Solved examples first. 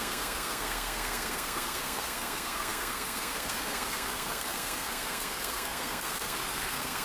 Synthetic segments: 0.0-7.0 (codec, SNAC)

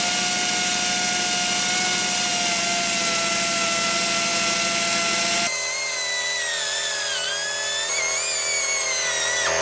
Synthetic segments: none

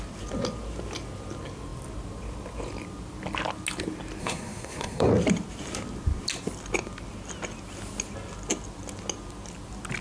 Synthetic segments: 4.2-5.1 (codec, SNAC)

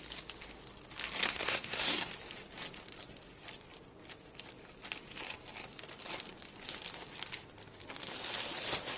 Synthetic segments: 1.2-2.1 (codec, SNAC)

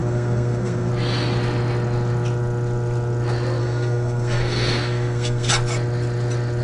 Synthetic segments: 0.0-0.9 (codec, SNAC); 3.6-5.5